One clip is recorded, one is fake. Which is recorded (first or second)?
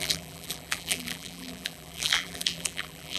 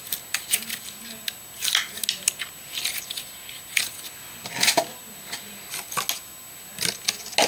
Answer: second